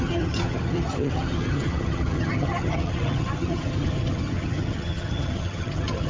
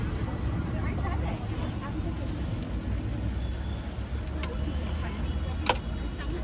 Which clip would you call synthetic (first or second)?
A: first